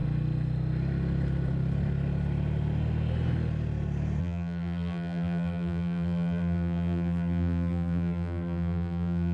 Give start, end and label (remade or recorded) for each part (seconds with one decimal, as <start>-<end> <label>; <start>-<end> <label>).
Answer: 0.0-4.2 recorded; 4.2-9.3 remade